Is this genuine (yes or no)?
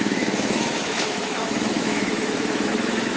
no